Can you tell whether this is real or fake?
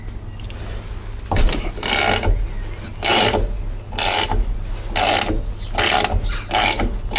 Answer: real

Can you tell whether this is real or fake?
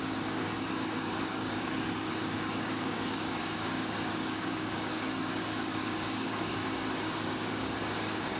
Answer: fake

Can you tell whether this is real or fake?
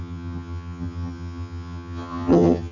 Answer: fake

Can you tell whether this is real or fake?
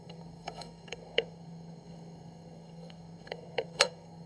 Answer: fake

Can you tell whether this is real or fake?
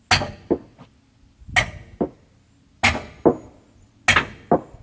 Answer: real